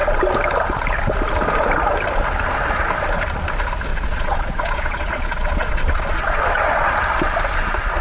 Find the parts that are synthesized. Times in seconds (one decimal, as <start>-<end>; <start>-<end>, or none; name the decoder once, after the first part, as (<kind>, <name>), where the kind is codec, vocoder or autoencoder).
3.9-7.0 (vocoder, Vocos)